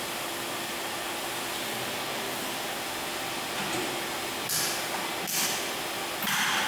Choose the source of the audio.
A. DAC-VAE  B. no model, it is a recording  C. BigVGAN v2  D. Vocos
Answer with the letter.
B